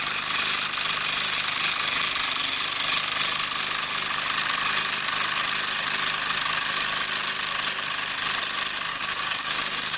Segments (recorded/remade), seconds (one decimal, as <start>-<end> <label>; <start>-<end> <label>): 0.0-8.9 recorded; 8.9-10.0 remade